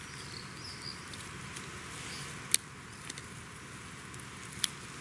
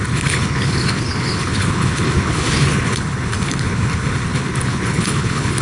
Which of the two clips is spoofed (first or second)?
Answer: second